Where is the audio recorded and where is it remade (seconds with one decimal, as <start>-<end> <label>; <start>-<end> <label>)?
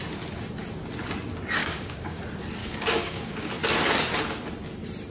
0.0-1.6 recorded; 1.6-2.2 remade; 2.2-2.6 recorded; 2.6-3.5 remade; 3.5-5.1 recorded